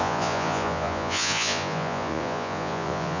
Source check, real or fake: fake